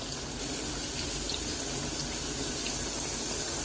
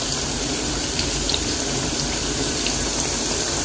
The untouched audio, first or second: first